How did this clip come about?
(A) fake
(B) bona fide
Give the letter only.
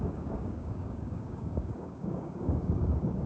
A